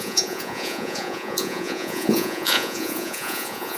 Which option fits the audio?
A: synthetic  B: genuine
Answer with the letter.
A